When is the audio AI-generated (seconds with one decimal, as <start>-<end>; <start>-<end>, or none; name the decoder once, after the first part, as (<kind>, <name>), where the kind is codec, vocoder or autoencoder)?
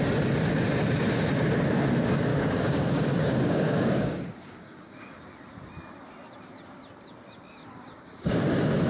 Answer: 2.3-5.3 (codec, DAC); 7.6-8.4